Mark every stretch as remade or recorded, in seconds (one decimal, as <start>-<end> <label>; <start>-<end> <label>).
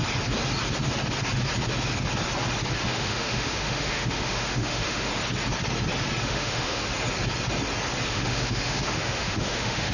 0.0-2.8 recorded; 2.8-5.1 remade; 5.1-6.2 recorded; 6.2-6.8 remade; 6.8-8.1 recorded; 8.1-9.9 remade